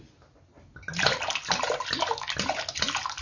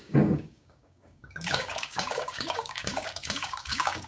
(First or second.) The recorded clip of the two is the first